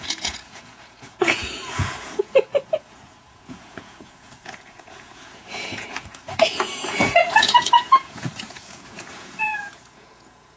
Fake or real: fake